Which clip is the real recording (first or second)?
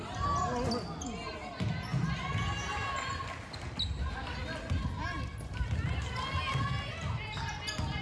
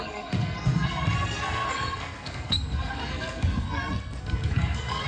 first